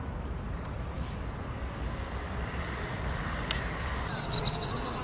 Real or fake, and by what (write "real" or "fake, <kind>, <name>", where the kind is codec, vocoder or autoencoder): real